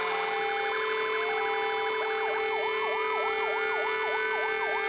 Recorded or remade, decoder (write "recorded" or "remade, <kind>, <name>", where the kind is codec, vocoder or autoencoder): recorded